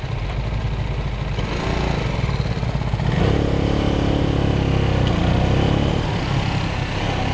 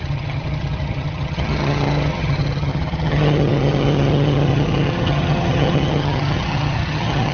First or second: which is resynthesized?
second